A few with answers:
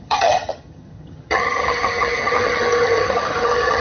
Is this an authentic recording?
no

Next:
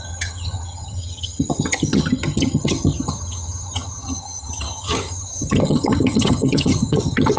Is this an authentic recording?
no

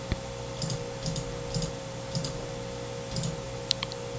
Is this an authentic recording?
yes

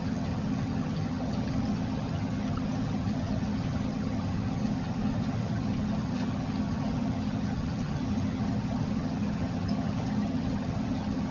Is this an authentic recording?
no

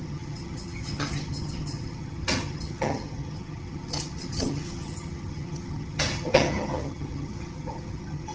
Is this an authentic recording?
no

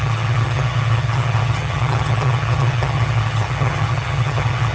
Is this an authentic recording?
no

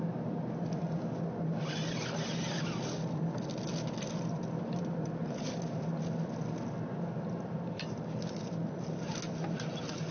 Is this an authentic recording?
yes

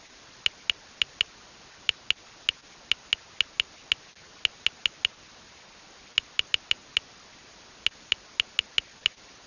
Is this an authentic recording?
yes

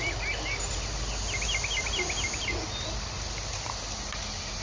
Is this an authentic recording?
yes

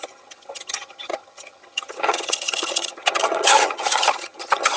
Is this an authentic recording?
no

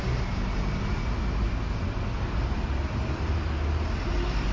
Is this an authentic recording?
yes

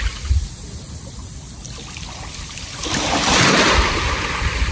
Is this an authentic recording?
yes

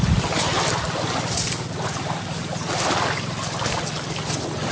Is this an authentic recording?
yes